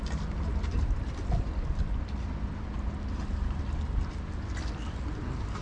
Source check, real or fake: real